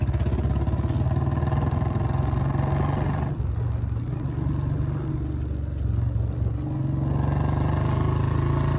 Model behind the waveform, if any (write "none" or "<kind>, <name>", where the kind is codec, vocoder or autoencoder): none